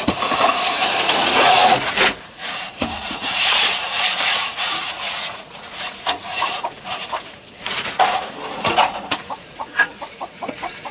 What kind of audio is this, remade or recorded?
remade